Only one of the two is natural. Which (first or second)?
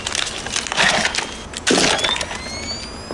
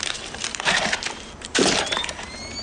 first